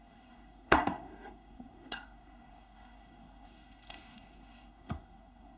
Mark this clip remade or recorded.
remade